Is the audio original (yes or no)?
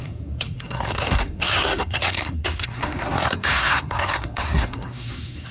no